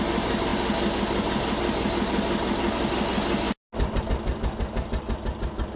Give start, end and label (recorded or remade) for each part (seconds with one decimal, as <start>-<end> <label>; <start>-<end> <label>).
0.0-5.8 recorded